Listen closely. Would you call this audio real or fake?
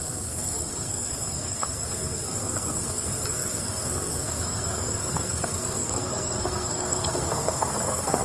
fake